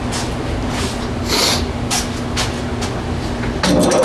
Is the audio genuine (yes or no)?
yes